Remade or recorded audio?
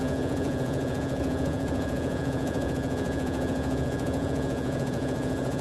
remade